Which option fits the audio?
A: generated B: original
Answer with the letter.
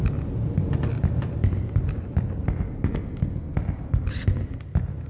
B